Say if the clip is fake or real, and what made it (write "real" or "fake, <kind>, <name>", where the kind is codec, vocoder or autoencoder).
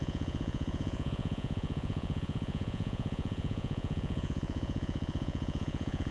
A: fake, vocoder, Vocos